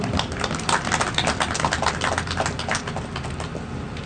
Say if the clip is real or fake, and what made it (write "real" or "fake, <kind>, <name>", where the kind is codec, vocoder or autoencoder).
real